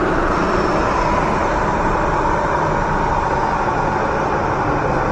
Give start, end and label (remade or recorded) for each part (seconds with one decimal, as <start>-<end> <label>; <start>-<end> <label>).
0.0-5.1 recorded